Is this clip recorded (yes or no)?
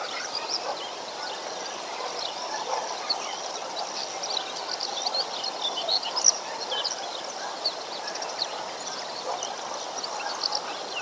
yes